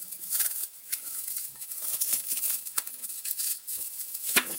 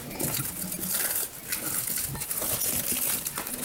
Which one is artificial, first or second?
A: first